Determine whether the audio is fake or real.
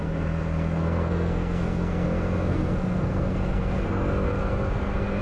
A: fake